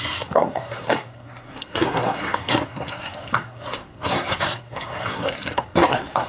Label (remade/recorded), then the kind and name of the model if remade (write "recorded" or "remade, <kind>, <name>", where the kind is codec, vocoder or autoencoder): remade, codec, SNAC